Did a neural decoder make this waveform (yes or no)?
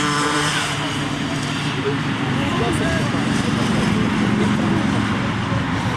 yes